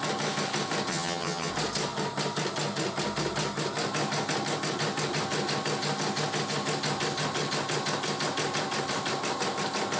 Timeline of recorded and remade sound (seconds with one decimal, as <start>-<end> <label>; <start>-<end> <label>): 0.0-0.9 recorded; 0.9-1.5 remade; 1.5-10.0 recorded